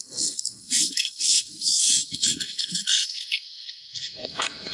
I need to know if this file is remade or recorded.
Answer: remade